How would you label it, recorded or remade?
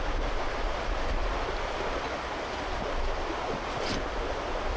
recorded